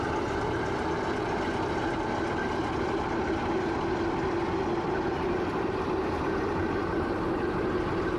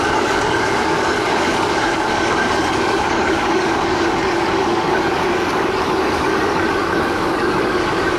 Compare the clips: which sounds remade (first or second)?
second